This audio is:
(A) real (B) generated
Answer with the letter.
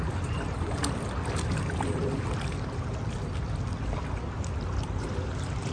A